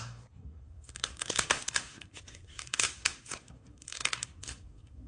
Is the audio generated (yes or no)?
yes